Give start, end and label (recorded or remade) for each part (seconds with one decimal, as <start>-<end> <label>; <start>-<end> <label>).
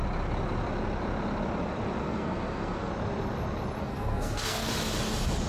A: 0.0-2.0 recorded; 2.0-2.9 remade; 2.9-3.8 recorded; 3.8-4.7 remade; 4.7-5.5 recorded